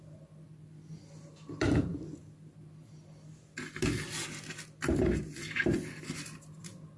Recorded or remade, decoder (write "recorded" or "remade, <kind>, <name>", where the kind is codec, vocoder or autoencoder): recorded